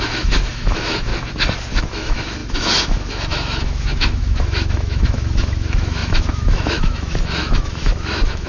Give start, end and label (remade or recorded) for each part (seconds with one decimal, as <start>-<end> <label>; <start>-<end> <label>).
0.0-1.1 remade; 1.1-1.8 recorded; 1.8-8.5 remade